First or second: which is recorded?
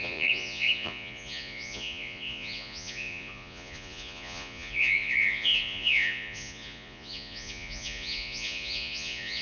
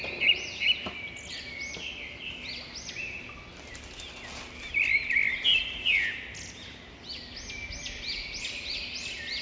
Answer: second